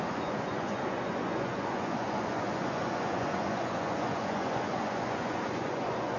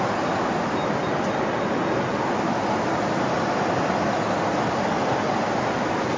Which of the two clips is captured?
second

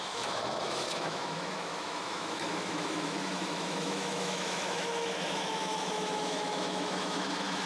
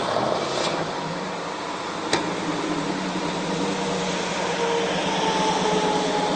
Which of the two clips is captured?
second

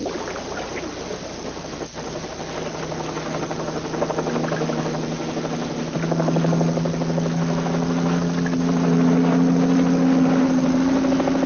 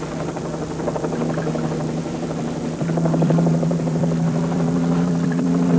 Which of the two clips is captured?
first